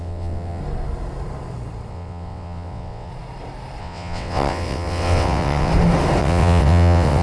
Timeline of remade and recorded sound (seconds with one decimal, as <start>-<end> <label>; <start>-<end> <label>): 0.0-0.6 remade; 0.6-1.9 recorded; 1.9-3.1 remade; 3.1-3.8 recorded; 3.8-5.7 remade; 5.7-6.2 recorded; 6.2-7.2 remade